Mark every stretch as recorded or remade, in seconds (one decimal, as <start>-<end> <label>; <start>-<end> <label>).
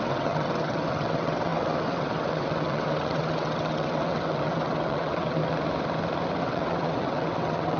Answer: 0.0-5.4 remade; 5.4-6.4 recorded; 6.4-7.8 remade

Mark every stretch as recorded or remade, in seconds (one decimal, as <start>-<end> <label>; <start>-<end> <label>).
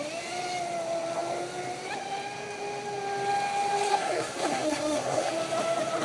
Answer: 0.0-3.9 recorded; 3.9-5.3 remade; 5.3-6.0 recorded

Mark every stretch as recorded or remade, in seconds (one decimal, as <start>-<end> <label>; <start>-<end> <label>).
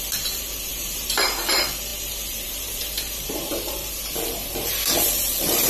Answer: 0.0-5.7 remade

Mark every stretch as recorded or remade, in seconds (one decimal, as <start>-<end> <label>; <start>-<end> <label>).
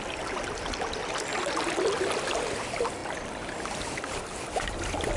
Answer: 0.0-5.2 recorded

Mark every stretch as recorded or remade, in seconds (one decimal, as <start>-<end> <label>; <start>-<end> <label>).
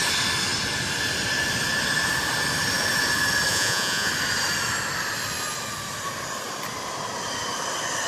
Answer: 0.0-3.5 recorded; 3.5-4.1 remade; 4.1-8.1 recorded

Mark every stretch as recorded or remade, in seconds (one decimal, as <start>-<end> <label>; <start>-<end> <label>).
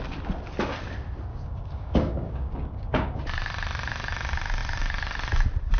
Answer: 0.0-1.3 recorded; 1.3-3.2 remade; 3.2-5.8 recorded